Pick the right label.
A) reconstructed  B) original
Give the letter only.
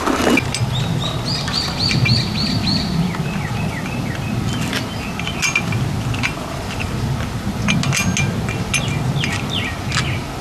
B